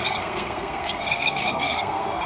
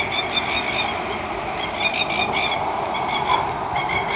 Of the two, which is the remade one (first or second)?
first